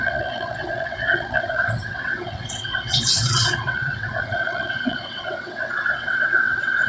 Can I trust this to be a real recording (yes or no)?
no